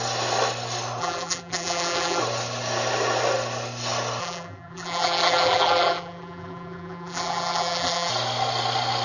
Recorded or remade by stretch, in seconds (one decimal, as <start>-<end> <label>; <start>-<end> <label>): 0.0-1.0 recorded; 1.0-2.2 remade; 2.2-4.2 recorded; 4.2-8.1 remade; 8.1-9.0 recorded